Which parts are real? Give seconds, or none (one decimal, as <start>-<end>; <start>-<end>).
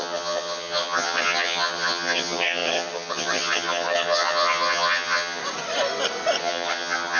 5.4-6.4